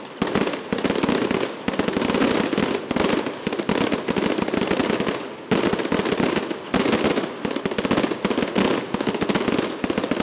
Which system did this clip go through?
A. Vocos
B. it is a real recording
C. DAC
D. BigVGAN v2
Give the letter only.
B